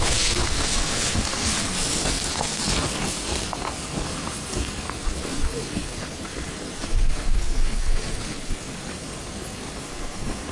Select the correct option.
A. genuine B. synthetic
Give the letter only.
B